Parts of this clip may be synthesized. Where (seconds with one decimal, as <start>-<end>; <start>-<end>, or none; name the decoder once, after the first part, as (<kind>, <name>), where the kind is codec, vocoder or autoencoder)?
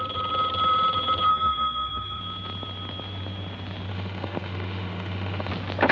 1.3-2.2 (autoencoder, DAC-VAE); 3.9-5.5